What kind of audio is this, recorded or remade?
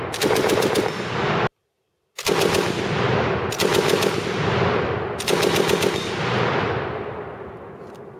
recorded